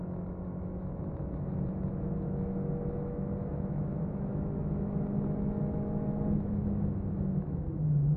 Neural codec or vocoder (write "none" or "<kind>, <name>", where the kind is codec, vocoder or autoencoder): autoencoder, DAC-VAE